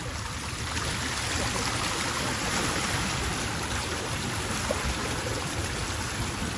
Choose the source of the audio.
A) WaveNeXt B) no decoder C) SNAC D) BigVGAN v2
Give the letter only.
B